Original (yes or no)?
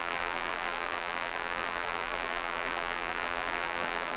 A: no